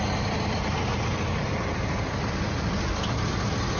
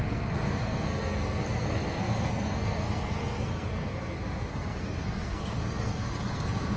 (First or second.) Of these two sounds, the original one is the first